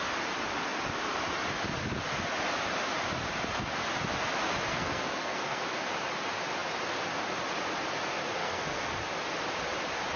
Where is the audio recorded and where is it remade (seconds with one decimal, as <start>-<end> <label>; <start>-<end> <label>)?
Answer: 0.0-4.7 recorded; 4.7-5.6 remade; 5.6-8.4 recorded; 8.4-8.9 remade; 8.9-10.2 recorded